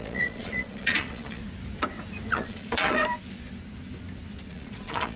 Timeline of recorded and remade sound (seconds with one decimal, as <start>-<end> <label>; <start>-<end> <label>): 0.0-1.4 remade; 1.4-2.3 recorded; 2.3-3.0 remade; 3.0-4.5 recorded; 4.5-5.2 remade